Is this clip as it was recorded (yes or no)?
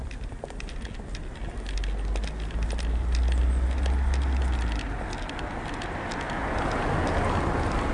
yes